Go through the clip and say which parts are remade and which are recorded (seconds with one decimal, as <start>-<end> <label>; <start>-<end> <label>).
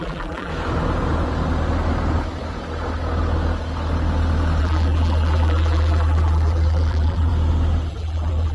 0.0-0.5 remade; 0.5-4.6 recorded; 4.6-7.3 remade; 7.3-7.9 recorded; 7.9-8.5 remade